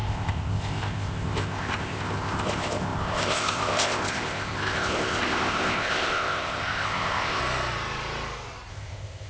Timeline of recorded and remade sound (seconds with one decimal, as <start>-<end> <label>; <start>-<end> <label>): 0.0-7.4 remade; 7.4-8.7 recorded; 8.7-9.3 remade